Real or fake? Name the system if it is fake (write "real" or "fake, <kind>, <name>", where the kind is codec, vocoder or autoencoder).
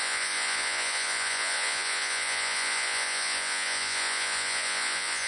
fake, vocoder, Vocos